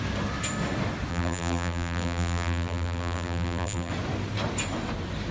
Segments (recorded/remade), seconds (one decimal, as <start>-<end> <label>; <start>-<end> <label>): 0.0-1.1 recorded; 1.1-3.9 remade; 3.9-5.3 recorded